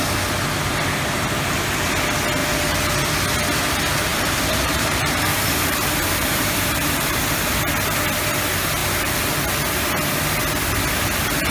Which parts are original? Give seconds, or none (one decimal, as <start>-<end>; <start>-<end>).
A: 0.0-2.4; 3.0-4.1; 7.2-11.5